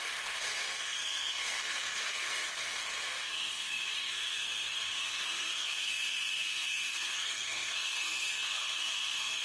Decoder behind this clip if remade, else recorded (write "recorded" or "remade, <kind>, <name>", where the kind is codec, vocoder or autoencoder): remade, codec, SNAC